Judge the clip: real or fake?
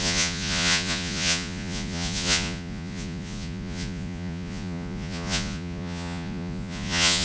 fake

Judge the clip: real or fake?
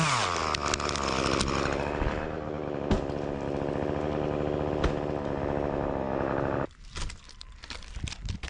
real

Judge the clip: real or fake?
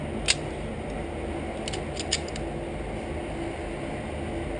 real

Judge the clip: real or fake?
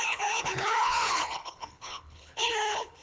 fake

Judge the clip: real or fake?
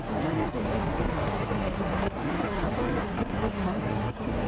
fake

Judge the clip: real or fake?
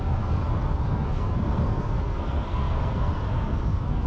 fake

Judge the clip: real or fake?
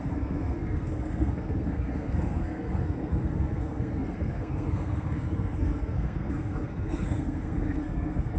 fake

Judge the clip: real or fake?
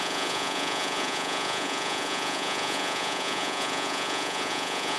fake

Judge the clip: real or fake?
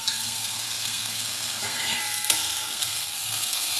fake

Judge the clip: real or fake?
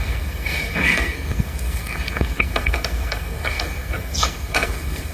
fake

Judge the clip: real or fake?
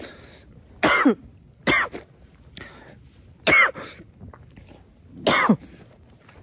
real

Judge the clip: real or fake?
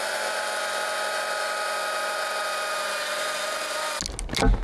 real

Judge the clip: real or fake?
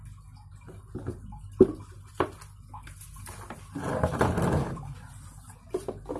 real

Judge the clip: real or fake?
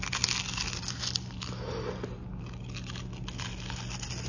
real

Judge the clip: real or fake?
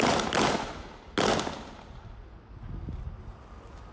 real